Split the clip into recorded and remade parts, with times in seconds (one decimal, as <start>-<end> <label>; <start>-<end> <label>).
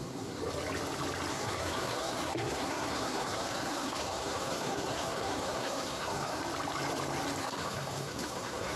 0.0-0.4 remade; 0.4-1.3 recorded; 1.3-6.4 remade; 6.4-7.4 recorded; 7.4-8.8 remade